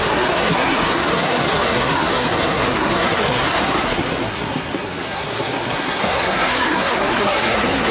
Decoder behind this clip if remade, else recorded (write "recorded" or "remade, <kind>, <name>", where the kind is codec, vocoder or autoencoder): remade, codec, SNAC